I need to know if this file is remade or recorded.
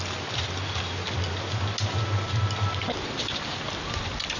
recorded